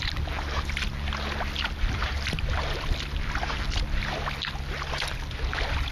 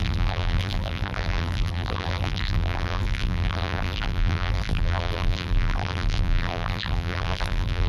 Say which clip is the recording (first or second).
first